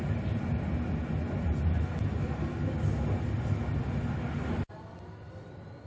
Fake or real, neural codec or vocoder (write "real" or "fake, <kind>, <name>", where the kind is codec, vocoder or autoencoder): real